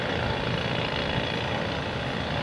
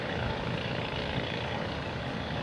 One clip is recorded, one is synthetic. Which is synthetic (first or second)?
second